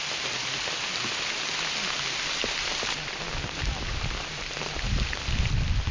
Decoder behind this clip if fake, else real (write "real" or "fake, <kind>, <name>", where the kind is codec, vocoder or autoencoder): real